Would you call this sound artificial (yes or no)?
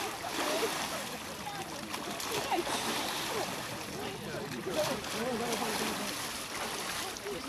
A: yes